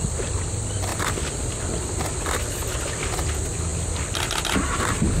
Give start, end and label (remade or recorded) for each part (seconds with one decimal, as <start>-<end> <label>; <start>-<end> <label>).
0.0-5.2 recorded